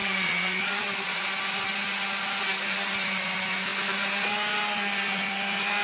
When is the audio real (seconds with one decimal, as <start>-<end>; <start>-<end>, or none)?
1.2-5.8